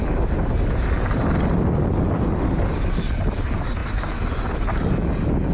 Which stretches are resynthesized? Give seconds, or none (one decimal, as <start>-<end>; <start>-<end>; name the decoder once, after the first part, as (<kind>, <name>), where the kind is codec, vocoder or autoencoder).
none